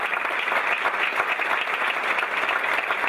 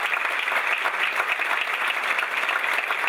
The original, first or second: first